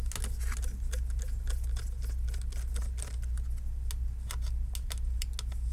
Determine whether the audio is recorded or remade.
recorded